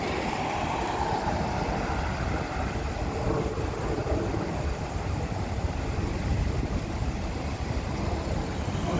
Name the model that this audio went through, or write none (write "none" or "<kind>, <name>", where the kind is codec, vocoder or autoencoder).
none